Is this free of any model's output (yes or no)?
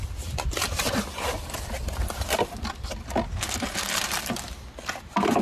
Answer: yes